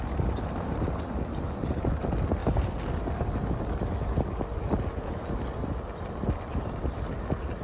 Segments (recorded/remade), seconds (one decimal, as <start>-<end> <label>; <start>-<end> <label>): 0.0-7.6 recorded